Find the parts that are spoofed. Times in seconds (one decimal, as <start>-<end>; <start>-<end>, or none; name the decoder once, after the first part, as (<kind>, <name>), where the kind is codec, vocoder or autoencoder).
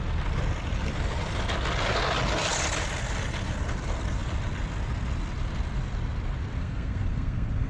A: 6.6-7.7 (codec, SNAC)